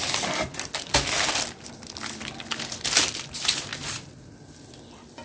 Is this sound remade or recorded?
recorded